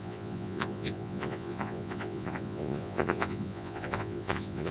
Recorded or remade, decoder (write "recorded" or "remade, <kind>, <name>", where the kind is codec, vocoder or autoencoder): remade, vocoder, Vocos